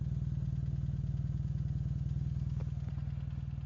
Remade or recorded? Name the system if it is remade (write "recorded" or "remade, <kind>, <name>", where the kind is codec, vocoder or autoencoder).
recorded